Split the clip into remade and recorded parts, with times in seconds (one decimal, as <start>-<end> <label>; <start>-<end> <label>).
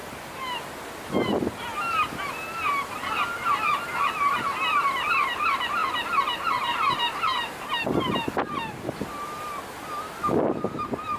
0.0-0.7 remade; 0.7-11.2 recorded